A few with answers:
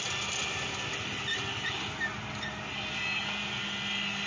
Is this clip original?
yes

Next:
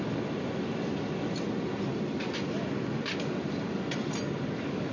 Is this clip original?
yes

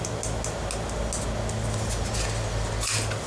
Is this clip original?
yes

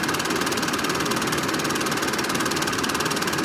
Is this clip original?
yes